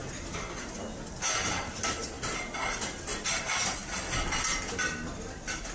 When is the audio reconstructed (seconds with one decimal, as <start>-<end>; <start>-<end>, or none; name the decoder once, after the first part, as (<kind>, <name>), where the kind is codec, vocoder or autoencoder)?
none